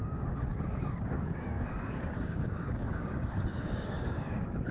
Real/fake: fake